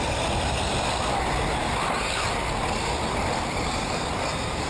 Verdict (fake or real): real